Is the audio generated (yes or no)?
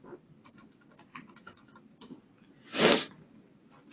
no